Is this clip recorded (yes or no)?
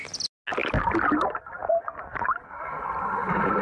yes